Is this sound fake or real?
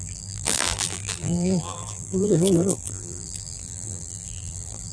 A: fake